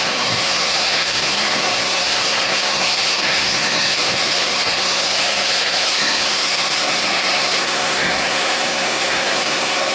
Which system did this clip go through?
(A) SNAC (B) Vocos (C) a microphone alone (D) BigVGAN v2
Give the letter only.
A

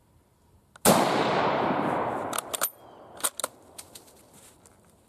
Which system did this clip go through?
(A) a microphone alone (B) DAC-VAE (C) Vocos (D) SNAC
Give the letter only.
A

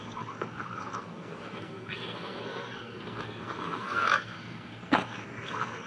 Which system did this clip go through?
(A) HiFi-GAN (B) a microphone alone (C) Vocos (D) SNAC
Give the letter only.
D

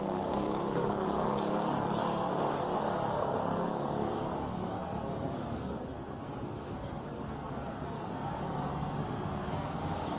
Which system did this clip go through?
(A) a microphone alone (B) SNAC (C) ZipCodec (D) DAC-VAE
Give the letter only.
B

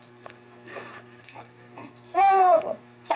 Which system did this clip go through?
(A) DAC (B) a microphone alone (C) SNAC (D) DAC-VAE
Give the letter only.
C